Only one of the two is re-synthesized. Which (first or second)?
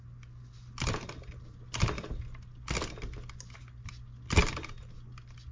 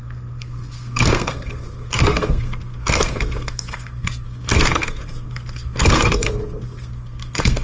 second